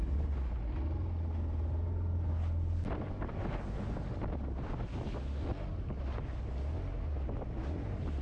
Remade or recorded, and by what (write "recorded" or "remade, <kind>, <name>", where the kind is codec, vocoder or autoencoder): recorded